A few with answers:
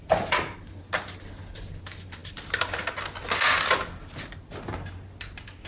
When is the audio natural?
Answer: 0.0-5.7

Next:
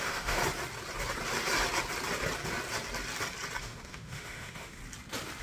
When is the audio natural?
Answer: 0.4-3.6; 4.8-5.4

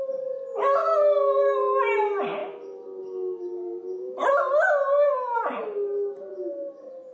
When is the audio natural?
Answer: 0.0-7.1